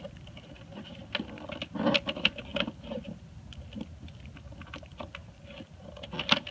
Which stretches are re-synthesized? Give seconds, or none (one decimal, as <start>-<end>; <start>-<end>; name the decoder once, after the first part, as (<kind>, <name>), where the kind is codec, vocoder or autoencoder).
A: none